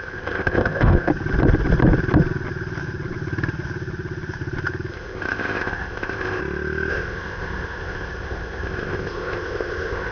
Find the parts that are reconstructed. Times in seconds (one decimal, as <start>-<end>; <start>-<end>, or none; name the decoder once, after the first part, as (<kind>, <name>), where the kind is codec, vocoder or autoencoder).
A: 0.0-1.1 (codec, ZipCodec); 4.9-6.4; 6.9-10.1